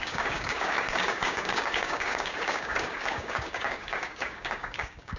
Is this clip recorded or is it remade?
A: remade